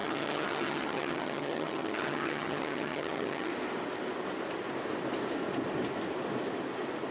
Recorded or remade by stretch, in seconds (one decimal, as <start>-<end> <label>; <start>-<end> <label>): 0.0-3.5 remade; 3.5-7.1 recorded